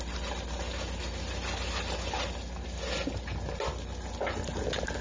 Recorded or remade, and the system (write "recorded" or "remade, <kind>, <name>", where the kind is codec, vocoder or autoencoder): recorded